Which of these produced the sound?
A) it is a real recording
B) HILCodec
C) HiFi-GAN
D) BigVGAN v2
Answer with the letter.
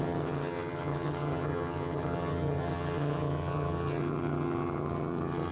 C